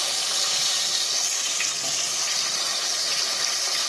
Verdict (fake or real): real